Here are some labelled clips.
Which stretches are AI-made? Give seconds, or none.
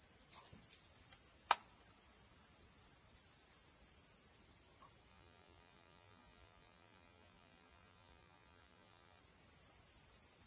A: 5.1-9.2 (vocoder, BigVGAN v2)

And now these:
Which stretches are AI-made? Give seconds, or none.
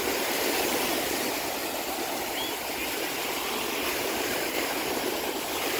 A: 0.0-1.6 (vocoder, BigVGAN v2); 3.7-5.8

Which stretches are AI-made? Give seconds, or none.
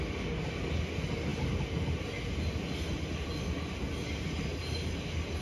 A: none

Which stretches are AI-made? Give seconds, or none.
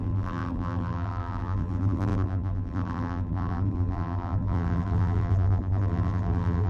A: 0.0-6.7 (vocoder, BigVGAN v2)